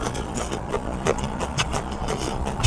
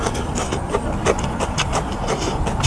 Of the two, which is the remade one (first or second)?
first